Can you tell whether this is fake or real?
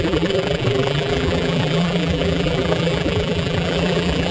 fake